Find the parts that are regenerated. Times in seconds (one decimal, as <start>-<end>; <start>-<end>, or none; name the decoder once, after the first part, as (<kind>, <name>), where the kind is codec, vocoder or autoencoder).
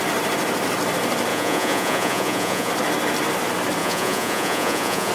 1.3-2.7 (vocoder, Vocos); 3.8-5.1